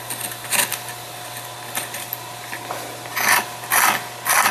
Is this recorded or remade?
recorded